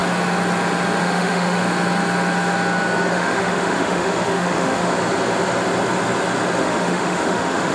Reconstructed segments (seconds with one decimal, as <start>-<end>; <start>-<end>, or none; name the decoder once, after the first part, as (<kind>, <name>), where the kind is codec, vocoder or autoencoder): 1.0-1.6 (autoencoder, DAC-VAE); 3.1-4.9; 6.6-7.7

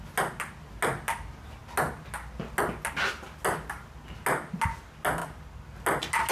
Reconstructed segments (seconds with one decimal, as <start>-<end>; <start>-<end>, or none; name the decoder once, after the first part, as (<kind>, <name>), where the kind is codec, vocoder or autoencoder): none

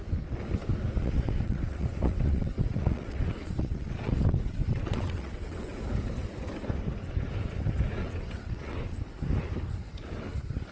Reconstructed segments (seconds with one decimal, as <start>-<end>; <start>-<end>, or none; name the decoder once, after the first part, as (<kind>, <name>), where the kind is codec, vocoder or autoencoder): 1.0-5.7 (vocoder, WaveNeXt); 8.0-9.0

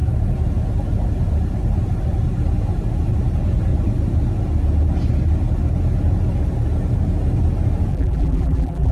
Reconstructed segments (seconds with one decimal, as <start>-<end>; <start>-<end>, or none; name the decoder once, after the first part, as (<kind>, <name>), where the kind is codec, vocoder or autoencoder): 7.9-8.9 (vocoder, BigVGAN v2)

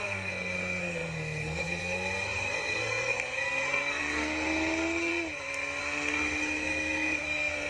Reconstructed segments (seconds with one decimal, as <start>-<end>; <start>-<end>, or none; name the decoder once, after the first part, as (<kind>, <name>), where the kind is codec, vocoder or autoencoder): 0.0-5.1 (codec, SNAC); 5.8-7.7

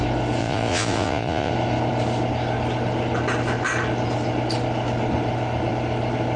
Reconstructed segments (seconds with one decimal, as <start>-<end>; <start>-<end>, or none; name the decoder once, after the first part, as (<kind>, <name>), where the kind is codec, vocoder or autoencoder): 0.4-1.5 (vocoder, Vocos)

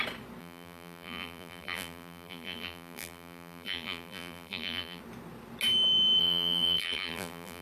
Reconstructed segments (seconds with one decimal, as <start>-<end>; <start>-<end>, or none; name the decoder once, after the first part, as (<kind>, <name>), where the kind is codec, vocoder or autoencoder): 0.4-5.0 (vocoder, BigVGAN v2); 6.2-7.6